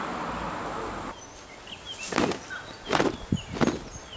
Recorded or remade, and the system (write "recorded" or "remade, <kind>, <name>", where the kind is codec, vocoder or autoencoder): recorded